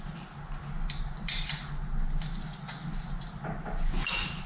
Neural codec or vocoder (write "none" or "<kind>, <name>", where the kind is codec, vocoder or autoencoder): none